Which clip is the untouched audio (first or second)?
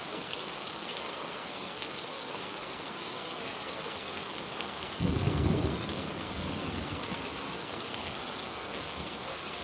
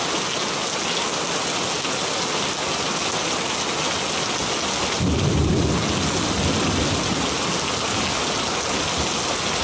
second